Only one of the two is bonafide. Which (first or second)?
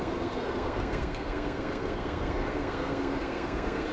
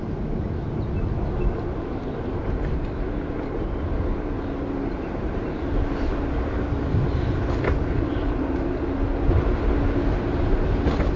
second